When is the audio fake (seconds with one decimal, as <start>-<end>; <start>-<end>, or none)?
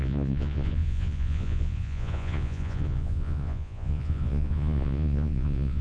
0.0-5.8